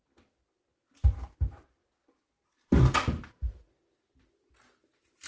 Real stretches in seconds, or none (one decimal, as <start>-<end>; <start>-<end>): 0.0-5.3